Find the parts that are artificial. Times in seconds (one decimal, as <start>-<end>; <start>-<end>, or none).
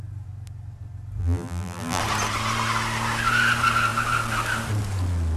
1.2-2.0